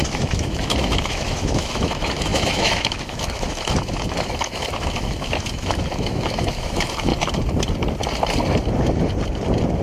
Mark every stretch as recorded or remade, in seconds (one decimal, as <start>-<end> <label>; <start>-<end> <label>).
0.0-7.1 remade; 7.1-9.8 recorded

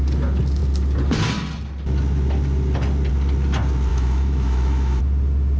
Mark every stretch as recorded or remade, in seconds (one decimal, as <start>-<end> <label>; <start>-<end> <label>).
0.0-3.9 recorded; 3.9-5.0 remade; 5.0-5.6 recorded

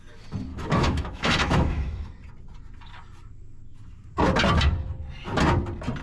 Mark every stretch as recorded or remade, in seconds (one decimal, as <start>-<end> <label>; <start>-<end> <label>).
0.0-0.5 recorded; 0.5-2.1 remade; 2.1-6.0 recorded

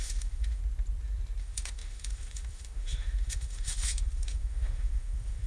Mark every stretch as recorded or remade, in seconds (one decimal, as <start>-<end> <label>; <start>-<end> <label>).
0.0-0.6 remade; 0.6-1.4 recorded; 1.4-5.5 remade

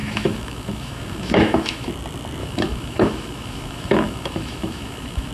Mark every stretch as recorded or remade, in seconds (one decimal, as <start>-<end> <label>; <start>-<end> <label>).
0.0-1.9 remade; 1.9-2.4 recorded; 2.4-5.3 remade